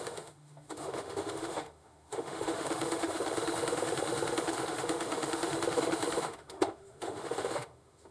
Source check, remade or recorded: remade